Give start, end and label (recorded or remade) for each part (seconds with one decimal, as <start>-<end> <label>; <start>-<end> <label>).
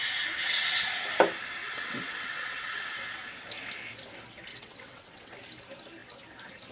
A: 0.0-1.6 recorded; 1.6-2.8 remade; 2.8-4.5 recorded; 4.5-5.3 remade; 5.3-6.7 recorded